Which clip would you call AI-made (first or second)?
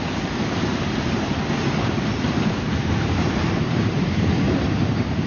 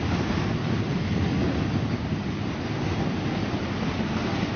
first